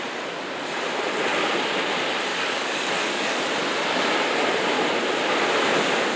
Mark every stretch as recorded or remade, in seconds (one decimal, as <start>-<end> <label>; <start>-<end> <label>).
0.0-2.3 recorded; 2.3-3.5 remade; 3.5-6.2 recorded